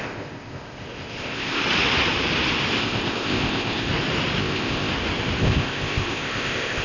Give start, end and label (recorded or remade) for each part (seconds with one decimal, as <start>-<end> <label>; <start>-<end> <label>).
0.0-1.6 remade; 1.6-2.8 recorded; 2.8-3.9 remade; 3.9-4.4 recorded; 4.4-4.9 remade; 4.9-5.4 recorded; 5.4-6.8 remade